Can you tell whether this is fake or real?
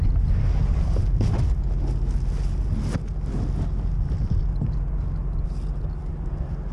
real